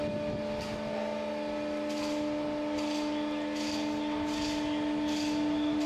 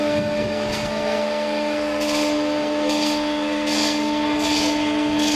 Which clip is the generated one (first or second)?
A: second